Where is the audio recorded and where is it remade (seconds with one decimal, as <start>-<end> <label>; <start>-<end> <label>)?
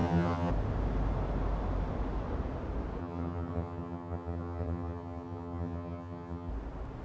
0.0-0.5 remade; 0.5-3.0 recorded; 3.0-6.5 remade; 6.5-7.0 recorded